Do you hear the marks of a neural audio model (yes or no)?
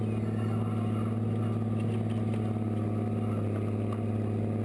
no